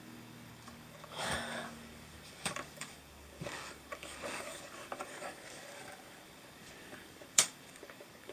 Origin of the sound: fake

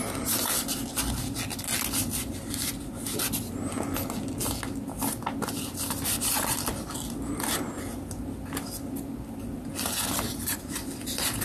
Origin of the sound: real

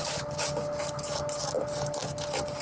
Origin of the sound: real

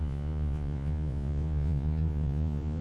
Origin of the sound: fake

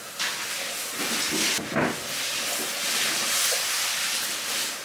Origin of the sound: real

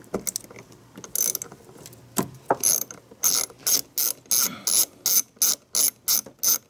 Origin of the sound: real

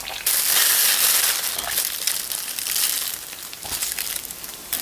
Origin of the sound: real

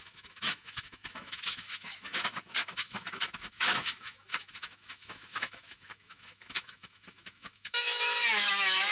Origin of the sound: fake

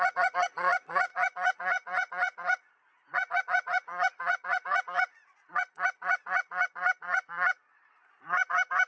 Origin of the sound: fake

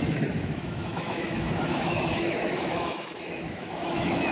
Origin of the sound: fake